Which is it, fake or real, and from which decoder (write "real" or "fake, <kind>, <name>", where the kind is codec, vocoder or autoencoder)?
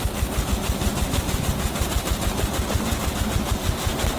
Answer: real